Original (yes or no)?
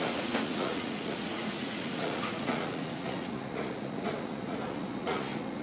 no